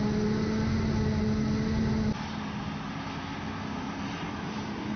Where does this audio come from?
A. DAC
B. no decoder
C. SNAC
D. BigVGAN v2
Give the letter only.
B